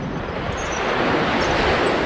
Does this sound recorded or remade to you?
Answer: recorded